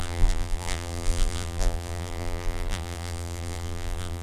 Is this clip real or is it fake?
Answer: fake